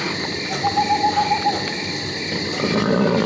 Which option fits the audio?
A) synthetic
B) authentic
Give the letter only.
B